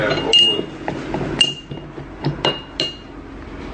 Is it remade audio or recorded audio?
recorded